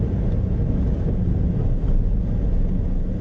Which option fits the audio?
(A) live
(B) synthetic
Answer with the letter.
A